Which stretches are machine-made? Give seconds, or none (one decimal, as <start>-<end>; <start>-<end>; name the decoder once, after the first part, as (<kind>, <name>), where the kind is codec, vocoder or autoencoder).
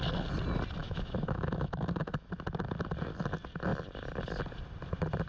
0.8-2.3 (autoencoder, DAC-VAE)